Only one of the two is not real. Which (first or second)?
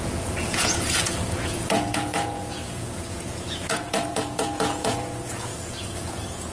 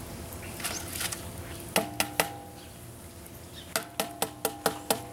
first